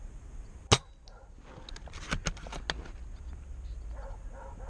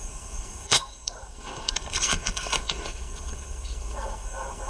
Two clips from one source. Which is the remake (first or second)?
second